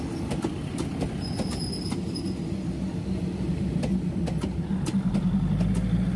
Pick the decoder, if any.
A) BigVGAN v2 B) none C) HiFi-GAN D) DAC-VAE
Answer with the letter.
B